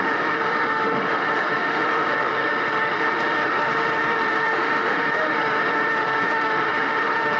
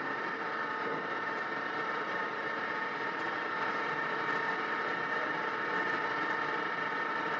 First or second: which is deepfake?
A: first